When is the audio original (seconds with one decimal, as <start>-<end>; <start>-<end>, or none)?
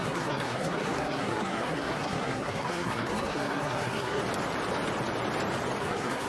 4.2-5.8